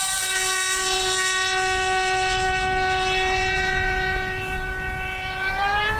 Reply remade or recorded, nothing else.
remade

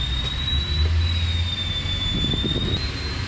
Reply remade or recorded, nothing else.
recorded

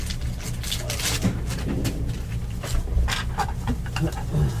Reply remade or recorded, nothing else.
recorded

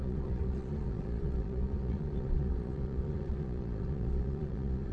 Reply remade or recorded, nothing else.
remade